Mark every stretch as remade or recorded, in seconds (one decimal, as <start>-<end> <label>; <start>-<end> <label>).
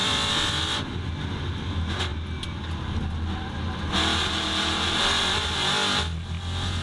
0.0-1.1 remade; 1.1-6.8 recorded